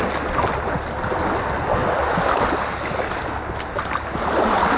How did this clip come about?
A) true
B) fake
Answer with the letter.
A